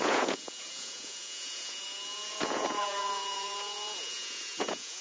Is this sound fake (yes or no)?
yes